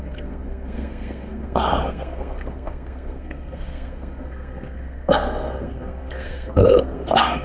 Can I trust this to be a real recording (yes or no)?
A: no